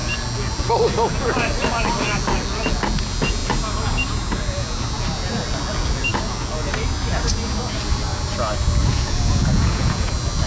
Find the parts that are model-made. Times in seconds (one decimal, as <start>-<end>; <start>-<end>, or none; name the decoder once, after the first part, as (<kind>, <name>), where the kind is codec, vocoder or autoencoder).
8.8-10.1 (vocoder, Vocos)